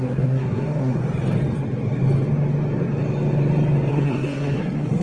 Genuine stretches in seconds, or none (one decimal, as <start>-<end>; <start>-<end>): 1.0-3.9